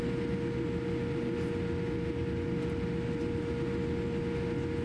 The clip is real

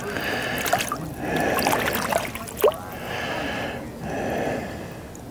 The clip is real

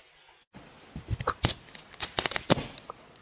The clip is real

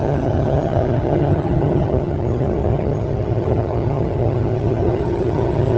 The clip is fake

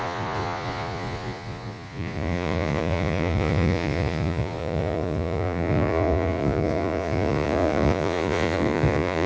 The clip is fake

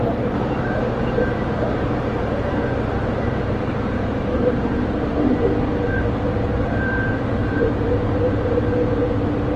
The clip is fake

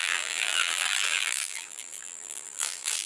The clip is fake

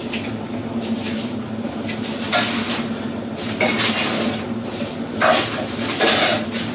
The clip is real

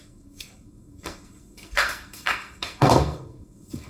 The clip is fake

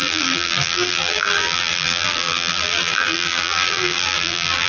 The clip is fake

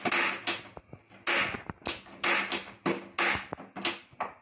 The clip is real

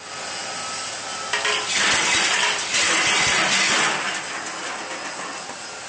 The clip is real